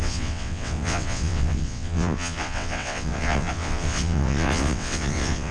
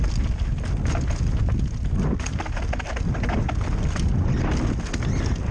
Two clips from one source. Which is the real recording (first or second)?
second